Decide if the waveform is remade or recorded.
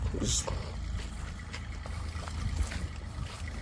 recorded